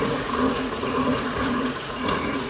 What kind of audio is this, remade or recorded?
remade